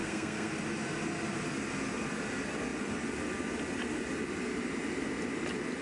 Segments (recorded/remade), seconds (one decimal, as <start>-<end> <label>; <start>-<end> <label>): 0.0-0.5 remade; 0.5-5.8 recorded